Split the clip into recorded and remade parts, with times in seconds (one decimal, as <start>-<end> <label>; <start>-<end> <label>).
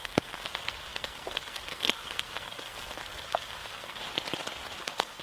0.0-4.0 remade; 4.0-4.8 recorded; 4.8-5.2 remade